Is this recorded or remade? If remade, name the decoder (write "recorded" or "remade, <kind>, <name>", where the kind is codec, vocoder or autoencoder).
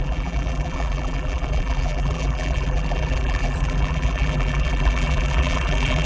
remade, vocoder, BigVGAN v2